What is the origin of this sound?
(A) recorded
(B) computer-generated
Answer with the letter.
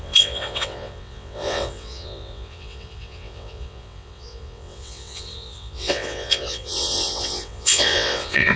B